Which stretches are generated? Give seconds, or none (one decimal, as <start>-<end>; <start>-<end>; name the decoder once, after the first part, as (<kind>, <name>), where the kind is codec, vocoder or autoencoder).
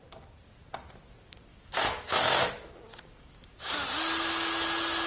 1.5-2.5 (autoencoder, DAC-VAE); 3.1-3.7